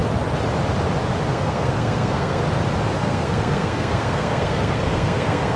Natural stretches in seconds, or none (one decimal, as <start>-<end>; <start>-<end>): 0.0-1.3; 2.4-3.0